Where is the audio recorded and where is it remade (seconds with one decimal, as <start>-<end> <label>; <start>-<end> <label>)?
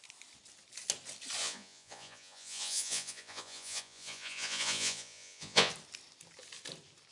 0.0-1.4 recorded; 1.4-5.7 remade; 5.7-7.1 recorded